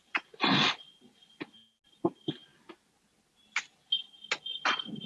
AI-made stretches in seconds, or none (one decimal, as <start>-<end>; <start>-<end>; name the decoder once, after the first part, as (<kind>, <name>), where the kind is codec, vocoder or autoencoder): none